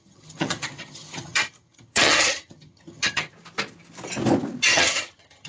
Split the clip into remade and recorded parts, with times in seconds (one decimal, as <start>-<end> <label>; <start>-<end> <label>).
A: 0.0-3.3 remade; 3.3-4.7 recorded; 4.7-5.5 remade